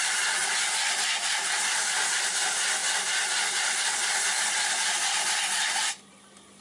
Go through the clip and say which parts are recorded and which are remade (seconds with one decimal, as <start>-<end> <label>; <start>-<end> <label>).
0.0-0.4 remade; 0.4-1.3 recorded; 1.3-6.6 remade